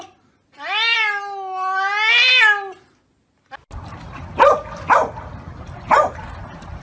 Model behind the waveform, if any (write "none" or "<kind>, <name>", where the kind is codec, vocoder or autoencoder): none